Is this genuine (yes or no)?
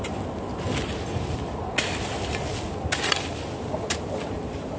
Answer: yes